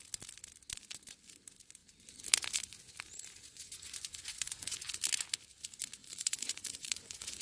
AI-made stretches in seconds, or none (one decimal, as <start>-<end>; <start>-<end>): 3.4-4.9; 6.0-7.4